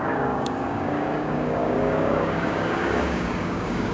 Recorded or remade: remade